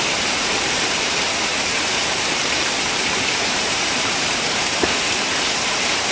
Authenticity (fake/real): fake